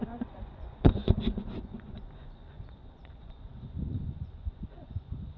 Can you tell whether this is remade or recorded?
remade